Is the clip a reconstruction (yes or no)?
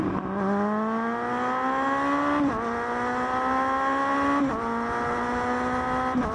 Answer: no